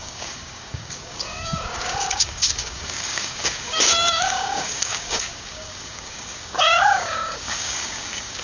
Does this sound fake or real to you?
fake